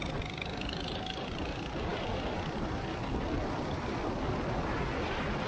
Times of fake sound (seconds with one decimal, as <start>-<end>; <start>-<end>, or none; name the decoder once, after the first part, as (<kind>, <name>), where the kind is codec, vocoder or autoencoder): none